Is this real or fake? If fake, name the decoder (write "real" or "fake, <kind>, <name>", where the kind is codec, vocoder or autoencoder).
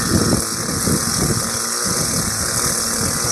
real